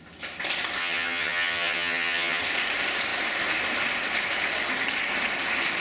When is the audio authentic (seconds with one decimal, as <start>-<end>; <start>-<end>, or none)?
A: 0.0-0.8; 2.4-5.8